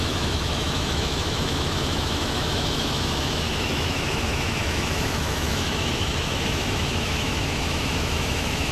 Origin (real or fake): fake